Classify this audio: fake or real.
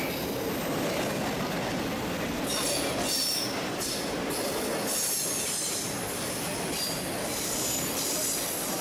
real